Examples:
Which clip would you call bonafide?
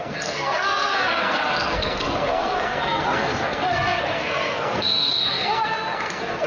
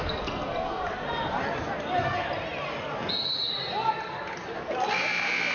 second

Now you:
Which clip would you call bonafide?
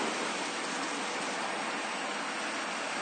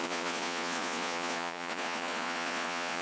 first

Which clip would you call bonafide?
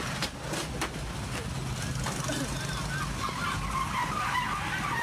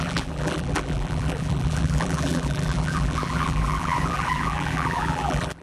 first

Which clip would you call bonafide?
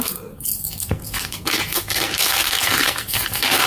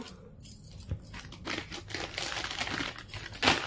second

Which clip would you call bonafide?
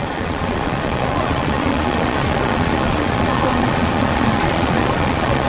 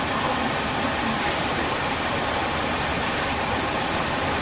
second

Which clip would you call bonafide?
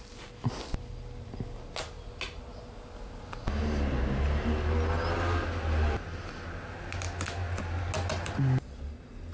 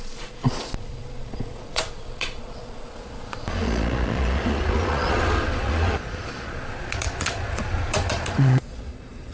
first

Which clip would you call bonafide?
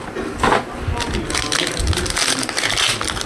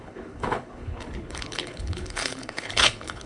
first